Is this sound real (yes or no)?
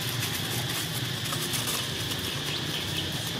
yes